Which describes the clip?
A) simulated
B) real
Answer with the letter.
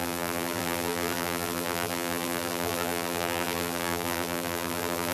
A